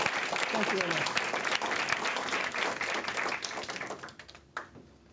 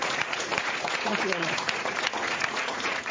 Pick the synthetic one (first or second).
second